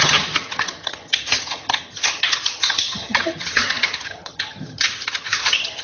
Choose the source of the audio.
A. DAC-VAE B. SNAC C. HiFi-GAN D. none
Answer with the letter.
C